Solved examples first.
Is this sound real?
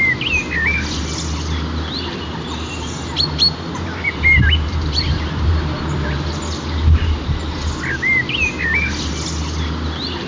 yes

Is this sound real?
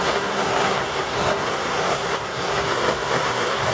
no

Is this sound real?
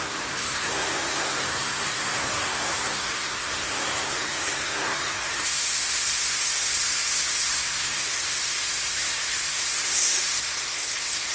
no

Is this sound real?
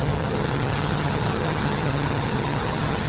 no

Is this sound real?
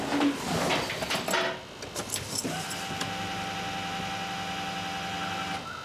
yes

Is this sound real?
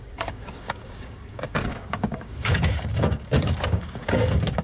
no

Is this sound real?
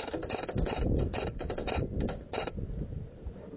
yes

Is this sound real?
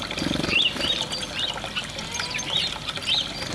yes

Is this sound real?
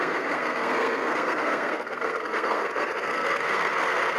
no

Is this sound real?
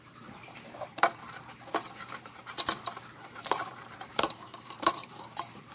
no